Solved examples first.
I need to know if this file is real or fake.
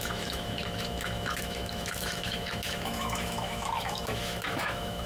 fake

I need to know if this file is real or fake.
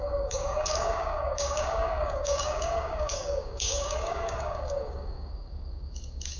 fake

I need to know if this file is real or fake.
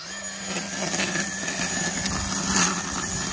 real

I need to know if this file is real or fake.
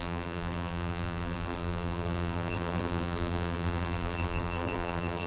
fake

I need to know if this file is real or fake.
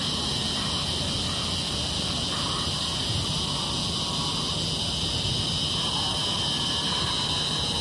real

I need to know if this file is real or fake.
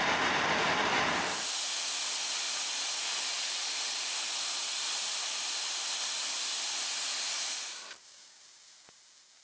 real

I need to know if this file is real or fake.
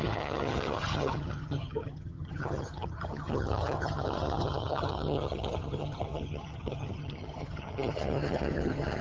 fake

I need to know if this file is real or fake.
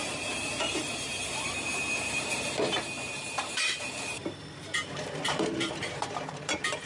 fake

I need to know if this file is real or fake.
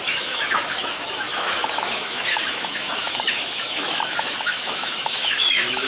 fake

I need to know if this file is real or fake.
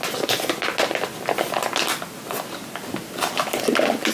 real